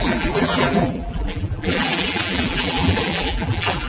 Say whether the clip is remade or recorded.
remade